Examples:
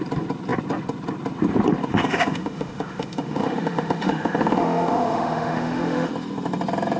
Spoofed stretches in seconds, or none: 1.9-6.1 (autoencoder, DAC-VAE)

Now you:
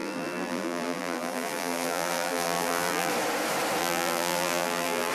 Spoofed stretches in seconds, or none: 0.0-3.1 (vocoder, BigVGAN v2); 3.8-5.1

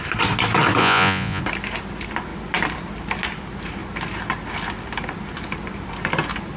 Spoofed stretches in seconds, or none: 0.8-1.4 (vocoder, Vocos)

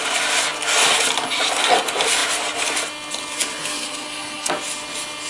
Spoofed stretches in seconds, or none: 3.6-4.5 (codec, SNAC)

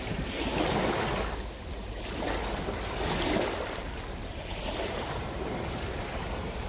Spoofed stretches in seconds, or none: 4.2-6.0 (vocoder, BigVGAN v2)

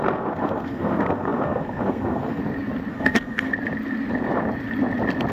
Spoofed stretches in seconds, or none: 0.0-2.4 (codec, SNAC); 2.9-3.5

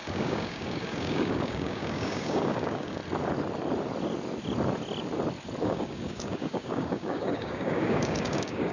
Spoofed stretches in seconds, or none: 0.0-3.0 (codec, DAC); 5.6-8.7

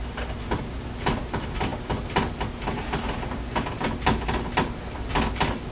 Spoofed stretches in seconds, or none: none